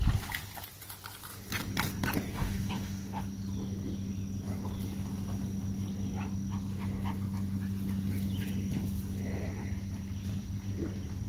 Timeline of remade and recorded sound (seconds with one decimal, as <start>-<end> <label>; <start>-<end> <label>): 0.0-2.3 recorded; 2.3-3.2 remade; 3.2-11.3 recorded